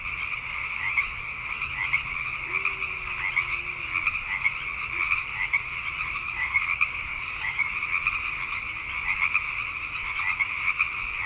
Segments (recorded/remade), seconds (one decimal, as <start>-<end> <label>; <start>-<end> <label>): 0.0-0.6 recorded; 0.6-1.7 remade; 1.7-6.2 recorded; 6.2-7.7 remade; 7.7-11.3 recorded